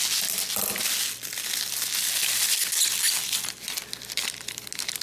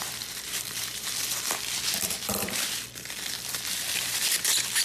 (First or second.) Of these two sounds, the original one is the first